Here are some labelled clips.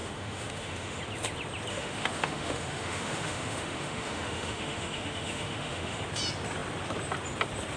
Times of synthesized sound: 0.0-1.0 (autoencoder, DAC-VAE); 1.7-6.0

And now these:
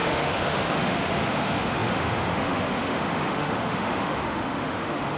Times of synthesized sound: 0.0-5.2 (autoencoder, DAC-VAE)